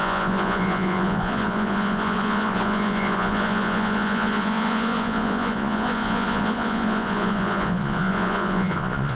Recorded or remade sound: remade